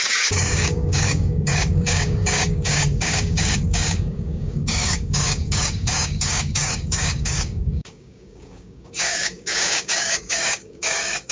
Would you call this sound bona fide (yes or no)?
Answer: no